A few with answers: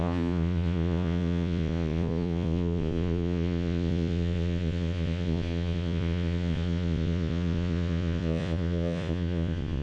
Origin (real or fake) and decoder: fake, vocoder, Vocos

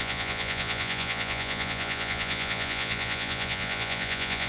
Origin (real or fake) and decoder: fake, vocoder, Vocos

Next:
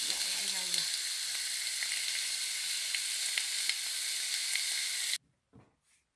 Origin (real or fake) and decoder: real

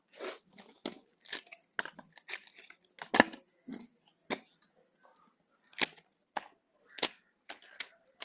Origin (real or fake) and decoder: real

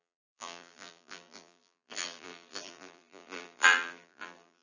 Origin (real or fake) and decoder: fake, vocoder, BigVGAN v2